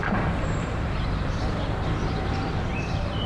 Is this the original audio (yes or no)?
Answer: no